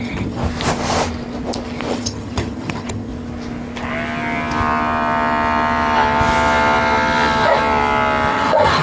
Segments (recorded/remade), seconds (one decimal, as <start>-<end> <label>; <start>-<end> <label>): 0.0-0.4 remade; 0.4-1.9 recorded; 1.9-3.1 remade; 3.1-8.3 recorded; 8.3-8.8 remade